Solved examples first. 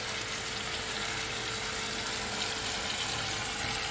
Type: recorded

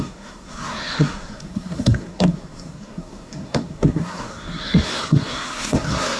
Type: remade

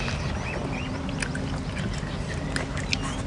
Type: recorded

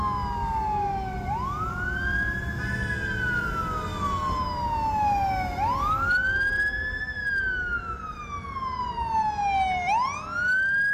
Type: recorded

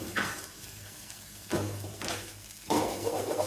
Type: remade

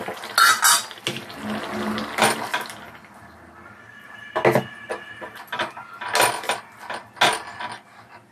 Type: recorded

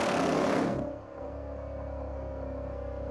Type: remade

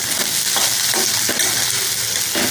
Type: recorded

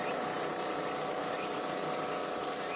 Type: recorded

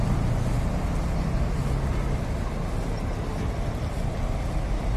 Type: recorded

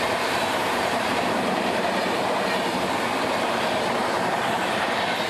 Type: remade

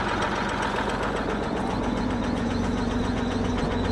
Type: remade